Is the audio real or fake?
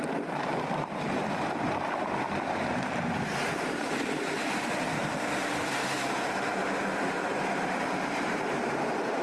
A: fake